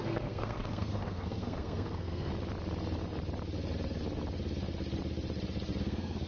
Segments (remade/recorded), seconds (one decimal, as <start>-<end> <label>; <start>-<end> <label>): 0.0-2.3 remade; 2.3-5.8 recorded; 5.8-6.3 remade

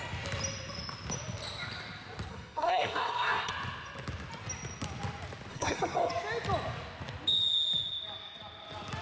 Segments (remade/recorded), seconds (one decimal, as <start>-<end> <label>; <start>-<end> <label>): 0.0-2.3 recorded; 2.3-3.5 remade; 3.5-5.5 recorded; 5.5-6.1 remade; 6.1-9.0 recorded

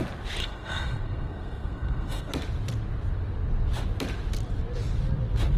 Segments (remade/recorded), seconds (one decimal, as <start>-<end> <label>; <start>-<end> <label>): 0.0-0.4 recorded; 0.4-2.3 remade; 2.3-5.6 recorded